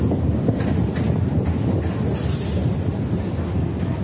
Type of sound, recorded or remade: recorded